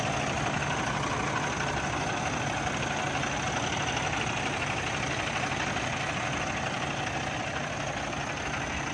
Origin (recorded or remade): recorded